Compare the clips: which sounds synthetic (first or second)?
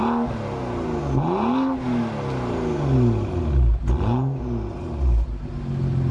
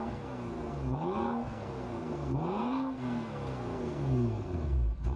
second